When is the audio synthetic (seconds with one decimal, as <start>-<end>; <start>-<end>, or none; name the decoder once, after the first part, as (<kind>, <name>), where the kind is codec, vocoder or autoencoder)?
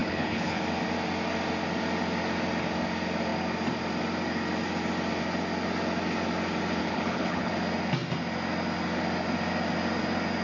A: 0.0-0.6 (codec, HILCodec); 6.8-7.5